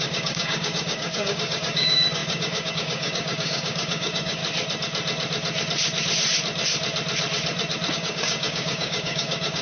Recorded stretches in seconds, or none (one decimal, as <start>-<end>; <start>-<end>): 4.4-7.9